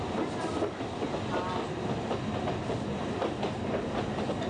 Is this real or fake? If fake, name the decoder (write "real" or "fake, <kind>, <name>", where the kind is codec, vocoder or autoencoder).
real